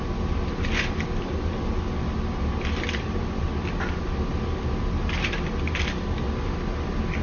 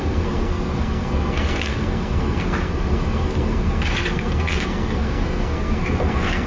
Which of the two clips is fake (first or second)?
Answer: second